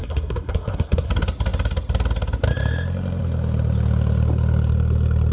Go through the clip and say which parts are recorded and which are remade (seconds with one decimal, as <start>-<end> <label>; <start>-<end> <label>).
0.0-1.1 remade; 1.1-5.3 recorded